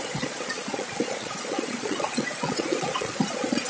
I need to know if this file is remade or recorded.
remade